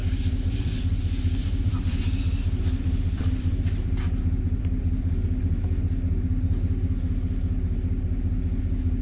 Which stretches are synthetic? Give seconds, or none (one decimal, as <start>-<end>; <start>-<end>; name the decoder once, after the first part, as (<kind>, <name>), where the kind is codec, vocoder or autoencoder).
0.0-0.8 (vocoder, BigVGAN v2); 1.4-5.1